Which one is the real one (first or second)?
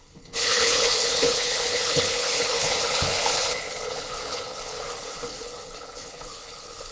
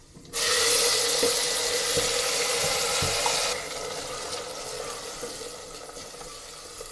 second